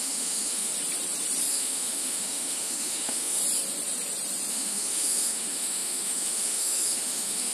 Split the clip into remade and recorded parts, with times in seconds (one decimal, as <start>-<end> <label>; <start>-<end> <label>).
0.0-0.7 remade; 0.7-1.5 recorded; 1.5-3.4 remade; 3.4-4.5 recorded; 4.5-7.5 remade